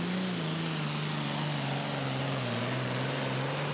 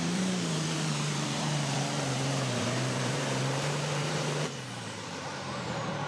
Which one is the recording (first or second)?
first